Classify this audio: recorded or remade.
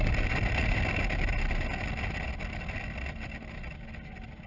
recorded